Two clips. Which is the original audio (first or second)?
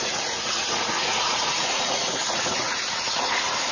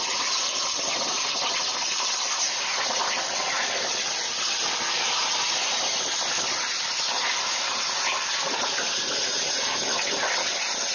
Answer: second